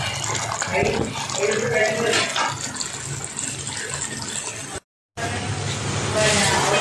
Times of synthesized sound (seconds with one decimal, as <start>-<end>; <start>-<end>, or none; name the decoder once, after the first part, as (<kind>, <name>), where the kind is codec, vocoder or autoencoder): none